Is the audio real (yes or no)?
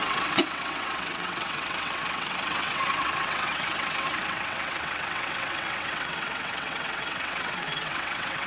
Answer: no